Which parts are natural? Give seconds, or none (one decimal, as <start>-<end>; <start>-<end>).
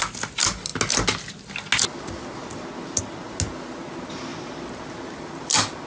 0.0-5.9